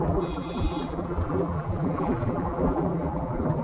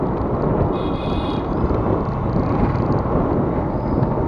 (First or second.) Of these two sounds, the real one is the second